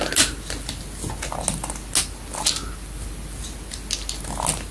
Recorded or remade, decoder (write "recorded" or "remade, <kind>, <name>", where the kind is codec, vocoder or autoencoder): recorded